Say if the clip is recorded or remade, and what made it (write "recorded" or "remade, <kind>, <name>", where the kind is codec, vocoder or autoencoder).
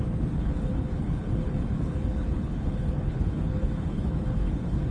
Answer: remade, codec, HILCodec